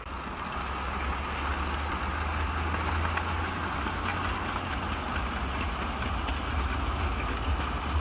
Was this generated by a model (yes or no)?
no